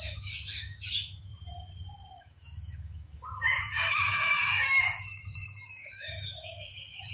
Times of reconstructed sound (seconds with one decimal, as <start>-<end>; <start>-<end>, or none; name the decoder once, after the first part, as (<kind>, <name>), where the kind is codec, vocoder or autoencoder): 0.0-1.3 (autoencoder, DAC-VAE); 2.2-7.1